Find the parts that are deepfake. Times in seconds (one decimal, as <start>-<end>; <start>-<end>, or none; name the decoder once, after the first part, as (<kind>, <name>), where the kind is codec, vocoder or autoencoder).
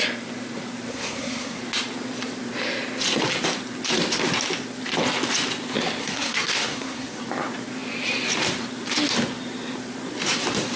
0.9-1.6 (codec, SNAC); 6.0-7.2